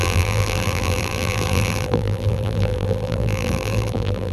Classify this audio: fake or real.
fake